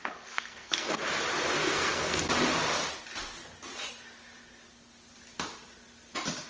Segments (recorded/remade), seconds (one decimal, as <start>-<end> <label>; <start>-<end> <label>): 0.0-1.0 remade; 1.0-1.6 recorded; 1.6-2.2 remade; 2.2-6.5 recorded